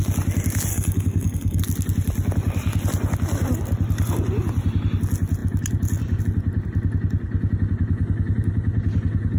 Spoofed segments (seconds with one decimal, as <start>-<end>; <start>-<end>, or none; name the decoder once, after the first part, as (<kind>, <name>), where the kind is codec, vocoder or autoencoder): 0.7-1.6 (codec, SNAC)